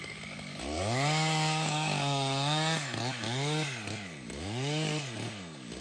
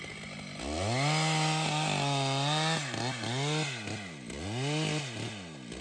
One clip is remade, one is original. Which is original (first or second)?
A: second